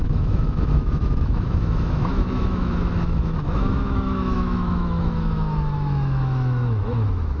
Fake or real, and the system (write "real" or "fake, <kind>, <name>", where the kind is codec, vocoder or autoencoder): fake, autoencoder, DAC-VAE